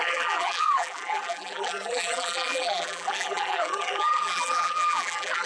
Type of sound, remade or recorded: remade